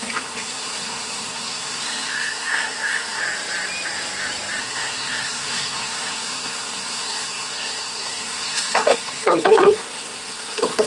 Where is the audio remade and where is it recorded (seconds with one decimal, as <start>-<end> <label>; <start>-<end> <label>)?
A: 0.0-3.2 remade; 3.2-4.6 recorded; 4.6-10.9 remade